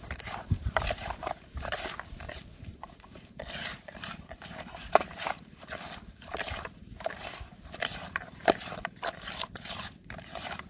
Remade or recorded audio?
remade